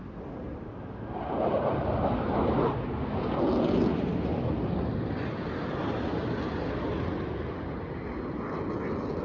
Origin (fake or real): real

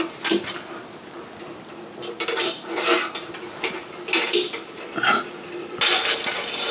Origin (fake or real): real